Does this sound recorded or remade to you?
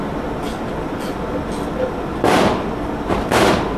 recorded